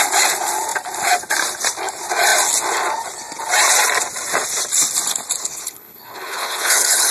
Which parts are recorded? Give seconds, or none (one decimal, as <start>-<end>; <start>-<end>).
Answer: 0.0-5.4